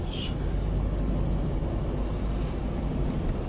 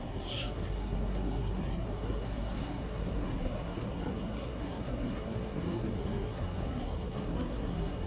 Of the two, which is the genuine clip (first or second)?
first